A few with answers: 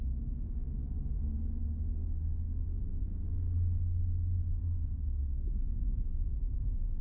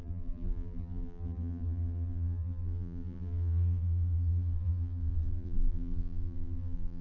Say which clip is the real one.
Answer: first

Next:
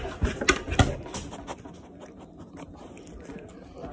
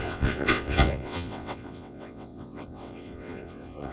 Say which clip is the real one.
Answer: first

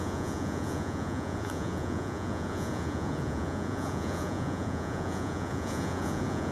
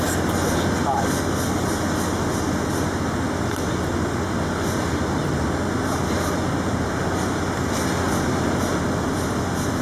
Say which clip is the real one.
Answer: second